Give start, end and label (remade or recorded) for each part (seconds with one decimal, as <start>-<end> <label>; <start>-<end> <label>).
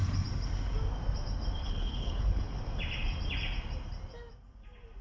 0.0-1.6 recorded; 1.6-2.6 remade; 2.6-5.0 recorded